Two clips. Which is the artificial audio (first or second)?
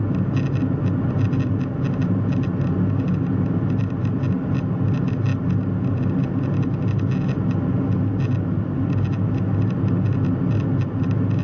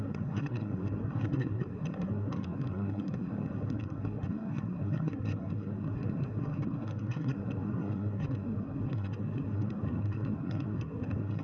second